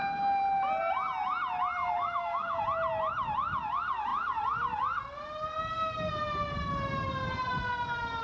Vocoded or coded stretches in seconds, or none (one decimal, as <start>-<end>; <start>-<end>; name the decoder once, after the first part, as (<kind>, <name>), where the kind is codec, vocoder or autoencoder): 1.8-2.6 (codec, DAC)